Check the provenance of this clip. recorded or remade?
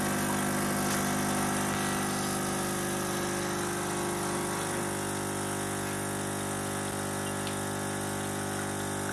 recorded